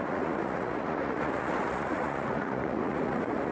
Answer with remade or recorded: remade